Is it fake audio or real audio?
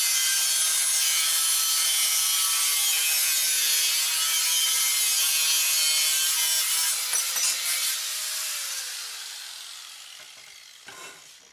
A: real